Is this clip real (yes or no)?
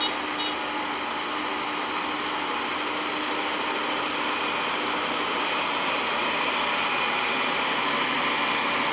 yes